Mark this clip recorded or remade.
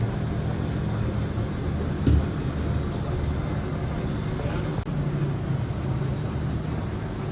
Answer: recorded